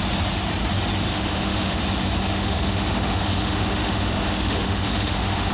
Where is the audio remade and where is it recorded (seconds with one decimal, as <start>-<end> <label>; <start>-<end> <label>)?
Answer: 0.0-1.1 recorded; 1.1-1.8 remade; 1.8-2.2 recorded; 2.2-5.5 remade